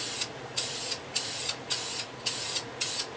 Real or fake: fake